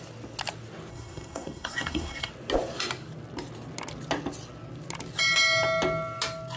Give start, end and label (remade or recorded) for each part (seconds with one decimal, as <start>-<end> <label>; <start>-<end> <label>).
0.0-0.9 recorded; 0.9-2.3 remade; 2.3-6.6 recorded